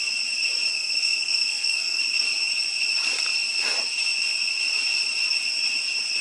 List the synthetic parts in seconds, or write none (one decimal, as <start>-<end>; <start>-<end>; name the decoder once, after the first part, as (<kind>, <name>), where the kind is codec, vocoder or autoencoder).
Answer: 0.7-2.0 (codec, SNAC)